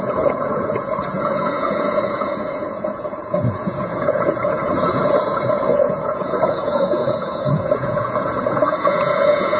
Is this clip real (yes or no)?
no